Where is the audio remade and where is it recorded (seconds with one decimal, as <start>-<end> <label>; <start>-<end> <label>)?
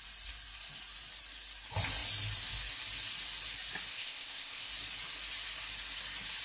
0.0-3.9 recorded; 3.9-4.7 remade; 4.7-6.4 recorded